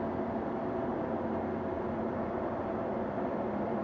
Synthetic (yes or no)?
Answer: no